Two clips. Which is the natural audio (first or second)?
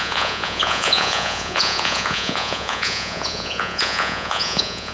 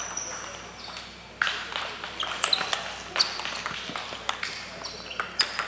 second